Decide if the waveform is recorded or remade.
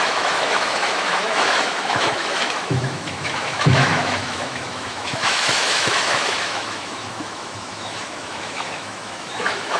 remade